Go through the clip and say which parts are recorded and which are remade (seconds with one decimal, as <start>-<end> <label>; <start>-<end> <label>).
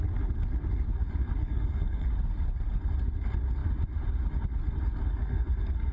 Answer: 0.0-1.4 recorded; 1.4-2.1 remade; 2.1-5.1 recorded; 5.1-5.9 remade